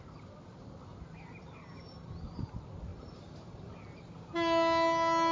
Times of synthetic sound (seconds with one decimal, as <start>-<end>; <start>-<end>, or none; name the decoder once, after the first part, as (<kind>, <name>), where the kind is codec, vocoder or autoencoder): 2.9-3.6 (vocoder, BigVGAN v2)